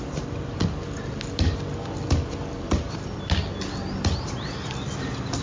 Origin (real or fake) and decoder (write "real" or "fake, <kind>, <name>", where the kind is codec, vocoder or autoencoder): real